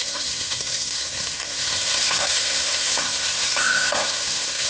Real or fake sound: fake